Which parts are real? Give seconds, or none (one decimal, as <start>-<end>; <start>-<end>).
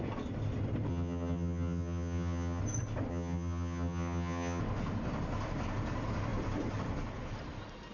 0.0-0.9; 2.6-3.1; 4.6-7.9